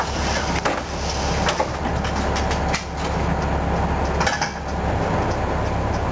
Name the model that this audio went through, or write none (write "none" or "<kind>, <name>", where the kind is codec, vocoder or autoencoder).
none